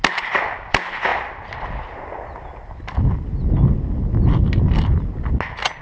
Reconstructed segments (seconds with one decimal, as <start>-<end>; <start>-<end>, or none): none